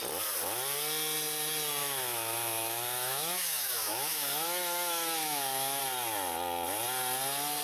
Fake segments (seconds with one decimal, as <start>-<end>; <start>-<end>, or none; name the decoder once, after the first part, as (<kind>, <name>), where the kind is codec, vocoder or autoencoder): 1.8-5.8 (autoencoder, DAC-VAE)